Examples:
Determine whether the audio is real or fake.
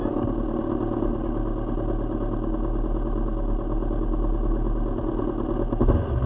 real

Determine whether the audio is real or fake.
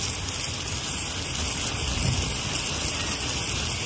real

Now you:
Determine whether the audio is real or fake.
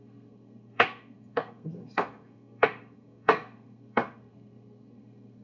fake